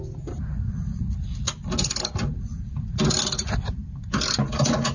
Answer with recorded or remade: recorded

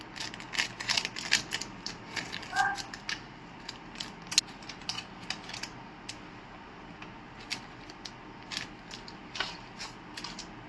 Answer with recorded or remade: recorded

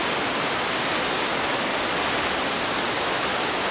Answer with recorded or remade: recorded